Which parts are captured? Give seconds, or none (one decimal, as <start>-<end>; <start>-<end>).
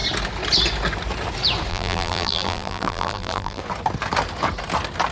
0.0-1.7; 3.6-5.1